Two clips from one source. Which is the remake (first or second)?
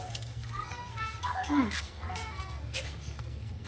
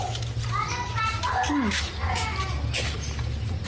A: first